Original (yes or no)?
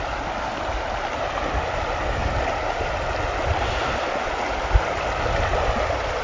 yes